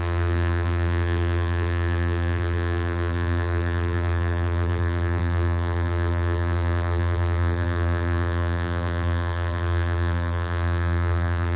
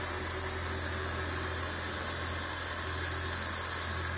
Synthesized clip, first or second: first